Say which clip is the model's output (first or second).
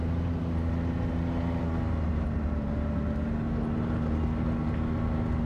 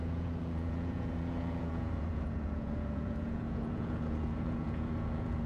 second